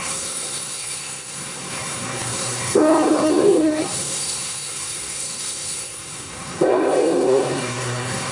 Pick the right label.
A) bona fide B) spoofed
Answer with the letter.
B